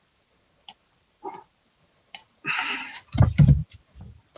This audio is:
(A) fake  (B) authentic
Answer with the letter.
A